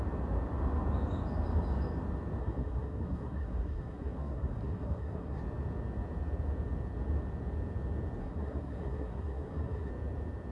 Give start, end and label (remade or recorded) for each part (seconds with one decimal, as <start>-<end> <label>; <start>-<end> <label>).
0.0-2.4 recorded; 2.4-5.4 remade; 5.4-8.2 recorded; 8.2-9.9 remade; 9.9-10.5 recorded